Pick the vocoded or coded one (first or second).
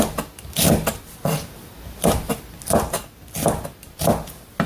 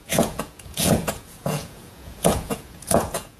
second